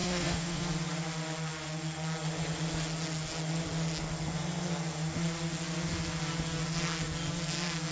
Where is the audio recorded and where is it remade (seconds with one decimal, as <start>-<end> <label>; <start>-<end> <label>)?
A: 0.0-0.6 remade; 0.6-7.9 recorded